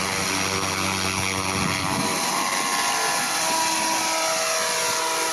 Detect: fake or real real